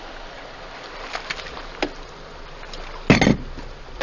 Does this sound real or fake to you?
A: real